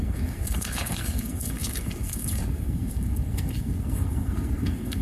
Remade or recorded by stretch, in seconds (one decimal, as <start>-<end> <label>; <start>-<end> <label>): 0.0-5.0 remade